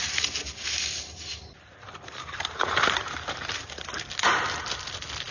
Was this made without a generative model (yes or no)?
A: yes